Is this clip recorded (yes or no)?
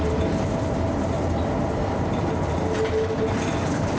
yes